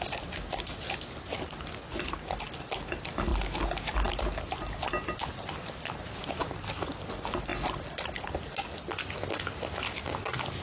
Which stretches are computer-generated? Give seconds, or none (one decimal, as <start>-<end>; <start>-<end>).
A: none